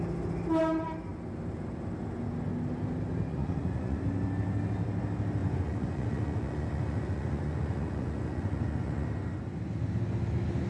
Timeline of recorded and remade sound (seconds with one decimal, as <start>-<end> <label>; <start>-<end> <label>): 0.0-3.3 recorded; 3.3-4.0 remade; 4.0-5.4 recorded; 5.4-9.1 remade; 9.1-10.7 recorded